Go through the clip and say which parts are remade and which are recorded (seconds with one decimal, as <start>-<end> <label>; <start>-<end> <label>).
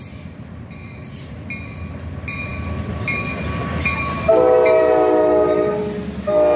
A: 0.0-6.6 recorded